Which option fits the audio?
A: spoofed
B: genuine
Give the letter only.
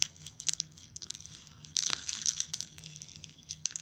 A